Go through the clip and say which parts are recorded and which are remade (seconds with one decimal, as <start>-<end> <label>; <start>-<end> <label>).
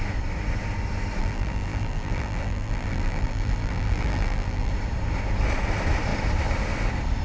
0.0-1.2 recorded; 1.2-4.7 remade; 4.7-7.2 recorded